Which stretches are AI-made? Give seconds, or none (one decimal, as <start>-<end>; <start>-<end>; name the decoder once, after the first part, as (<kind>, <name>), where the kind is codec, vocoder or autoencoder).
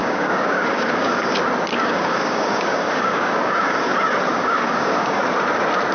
0.0-1.2 (codec, DAC); 1.7-3.9; 4.3-5.2